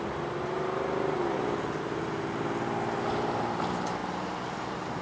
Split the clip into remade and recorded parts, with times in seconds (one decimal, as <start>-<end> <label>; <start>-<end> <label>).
0.0-5.0 recorded